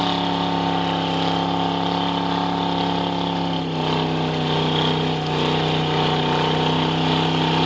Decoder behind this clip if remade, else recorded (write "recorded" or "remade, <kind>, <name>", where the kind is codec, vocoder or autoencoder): recorded